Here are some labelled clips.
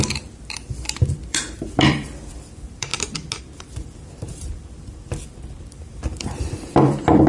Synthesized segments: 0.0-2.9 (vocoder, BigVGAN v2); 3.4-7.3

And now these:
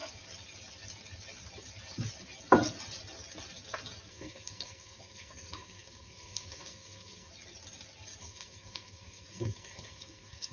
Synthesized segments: 4.1-7.3 (codec, SNAC); 8.2-10.5